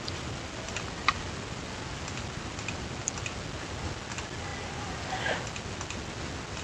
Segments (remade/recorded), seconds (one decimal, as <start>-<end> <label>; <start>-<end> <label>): 0.0-6.6 recorded